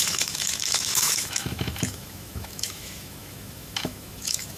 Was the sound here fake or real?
fake